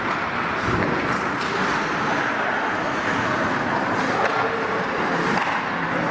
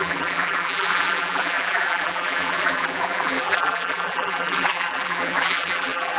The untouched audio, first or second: first